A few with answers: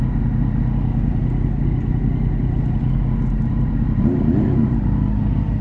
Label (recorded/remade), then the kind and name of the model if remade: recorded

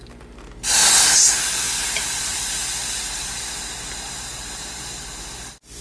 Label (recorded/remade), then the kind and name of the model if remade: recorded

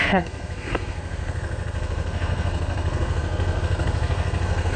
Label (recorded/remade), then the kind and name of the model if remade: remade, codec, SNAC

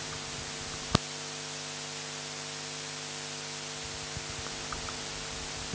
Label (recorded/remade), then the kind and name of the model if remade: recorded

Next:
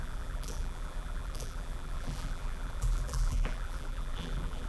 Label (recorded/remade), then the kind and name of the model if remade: remade, vocoder, BigVGAN v2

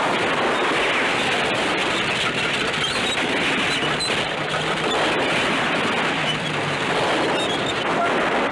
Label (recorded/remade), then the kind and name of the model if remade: recorded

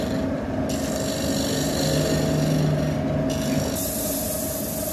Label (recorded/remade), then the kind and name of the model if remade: recorded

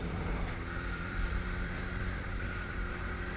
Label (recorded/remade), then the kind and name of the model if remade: remade, vocoder, BigVGAN v2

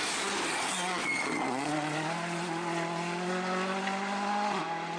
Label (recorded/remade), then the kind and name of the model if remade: recorded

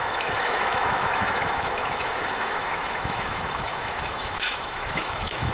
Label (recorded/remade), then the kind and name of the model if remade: remade, autoencoder, DAC-VAE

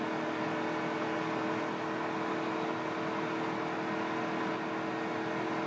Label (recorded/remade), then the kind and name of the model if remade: recorded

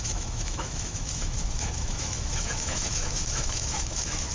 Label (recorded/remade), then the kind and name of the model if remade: remade, autoencoder, DAC-VAE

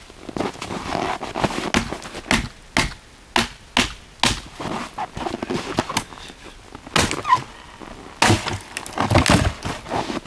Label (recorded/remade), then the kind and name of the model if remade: recorded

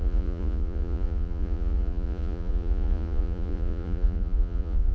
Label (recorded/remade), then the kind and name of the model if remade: remade, vocoder, Vocos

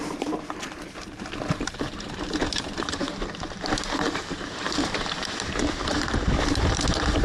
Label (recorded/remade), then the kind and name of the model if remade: remade, vocoder, BigVGAN v2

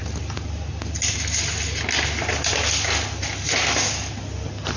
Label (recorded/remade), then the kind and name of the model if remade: recorded